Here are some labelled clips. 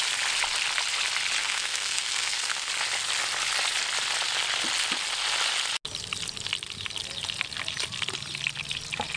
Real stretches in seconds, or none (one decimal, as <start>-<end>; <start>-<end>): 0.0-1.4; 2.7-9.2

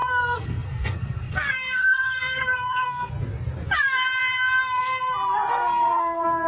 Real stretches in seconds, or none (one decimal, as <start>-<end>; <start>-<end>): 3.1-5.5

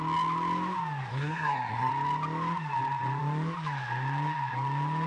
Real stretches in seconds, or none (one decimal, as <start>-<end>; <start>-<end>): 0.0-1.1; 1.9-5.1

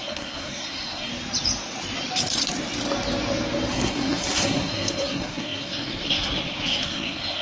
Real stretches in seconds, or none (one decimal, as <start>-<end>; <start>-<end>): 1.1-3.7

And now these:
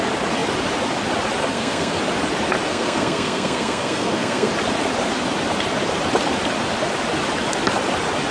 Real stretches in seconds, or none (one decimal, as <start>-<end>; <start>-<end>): 0.0-1.4; 2.0-2.7; 4.5-8.3

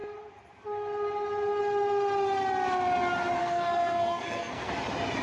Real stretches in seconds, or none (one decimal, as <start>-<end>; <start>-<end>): 0.0-3.4; 4.7-5.2

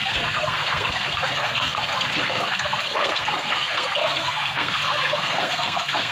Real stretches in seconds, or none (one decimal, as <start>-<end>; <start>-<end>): none